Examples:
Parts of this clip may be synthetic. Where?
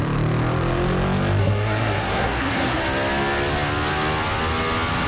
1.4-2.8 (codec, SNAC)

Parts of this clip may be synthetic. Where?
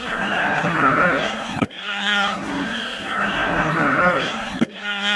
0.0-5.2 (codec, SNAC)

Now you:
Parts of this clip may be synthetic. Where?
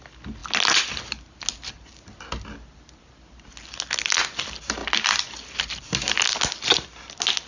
none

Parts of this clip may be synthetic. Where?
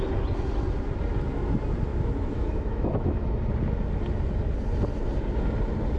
1.9-3.3 (autoencoder, DAC-VAE)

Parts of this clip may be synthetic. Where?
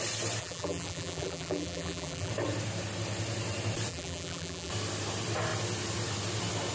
0.4-2.3 (vocoder, BigVGAN v2); 3.9-4.7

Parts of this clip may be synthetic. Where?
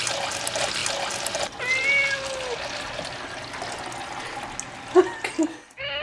none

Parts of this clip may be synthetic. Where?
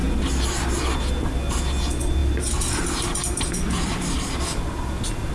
none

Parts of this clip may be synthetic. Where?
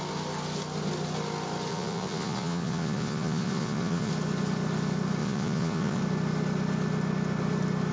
1.7-4.1 (vocoder, Vocos); 5.2-6.0